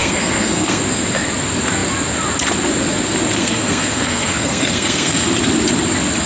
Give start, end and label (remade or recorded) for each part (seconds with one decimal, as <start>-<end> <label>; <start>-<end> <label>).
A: 0.0-0.8 remade; 0.8-3.4 recorded; 3.4-5.3 remade; 5.3-6.3 recorded